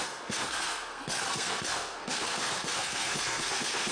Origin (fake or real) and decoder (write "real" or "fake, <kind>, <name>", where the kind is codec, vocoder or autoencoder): fake, codec, SNAC